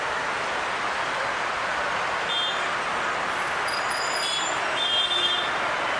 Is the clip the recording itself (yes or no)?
yes